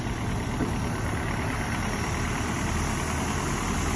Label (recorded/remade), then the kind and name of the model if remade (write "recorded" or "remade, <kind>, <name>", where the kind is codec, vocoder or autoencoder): recorded